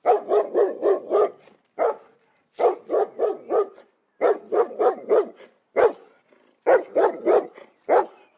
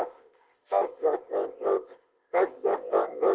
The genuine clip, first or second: first